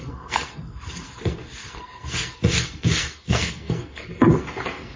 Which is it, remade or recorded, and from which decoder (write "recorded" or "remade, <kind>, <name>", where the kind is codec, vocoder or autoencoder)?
remade, codec, SNAC